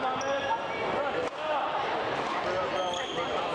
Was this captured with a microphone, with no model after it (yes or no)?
yes